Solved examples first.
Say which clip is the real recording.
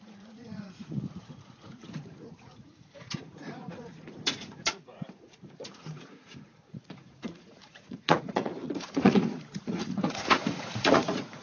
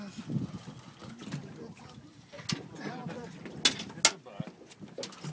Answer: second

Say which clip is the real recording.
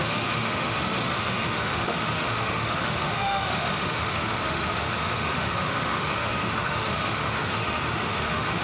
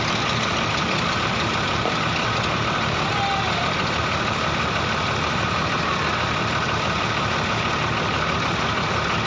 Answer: second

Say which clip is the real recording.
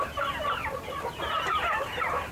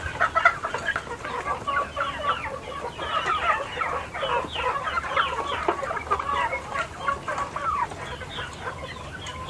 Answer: second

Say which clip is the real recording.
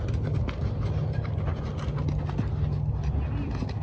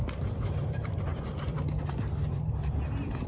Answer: first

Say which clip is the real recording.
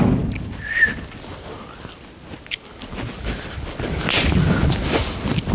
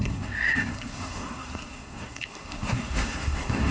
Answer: first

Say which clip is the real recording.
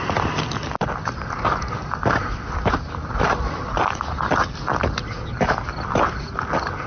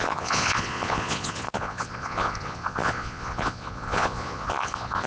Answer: first